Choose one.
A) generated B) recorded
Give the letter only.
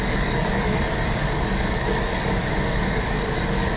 A